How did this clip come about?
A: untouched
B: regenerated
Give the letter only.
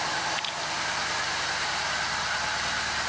A